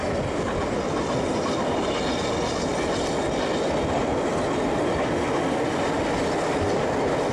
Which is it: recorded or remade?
recorded